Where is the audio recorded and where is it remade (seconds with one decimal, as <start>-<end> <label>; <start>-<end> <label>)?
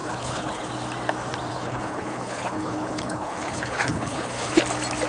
0.0-0.7 remade; 0.7-1.5 recorded; 1.5-4.6 remade; 4.6-5.1 recorded